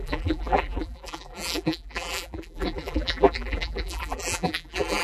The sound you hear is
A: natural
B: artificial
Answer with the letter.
B